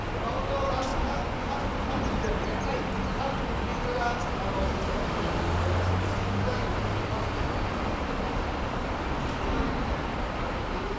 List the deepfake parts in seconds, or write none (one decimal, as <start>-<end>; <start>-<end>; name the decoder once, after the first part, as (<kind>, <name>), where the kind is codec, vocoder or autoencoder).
0.9-1.6 (vocoder, Vocos)